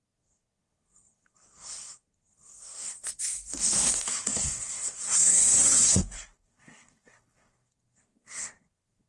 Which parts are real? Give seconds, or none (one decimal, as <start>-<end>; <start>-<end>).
none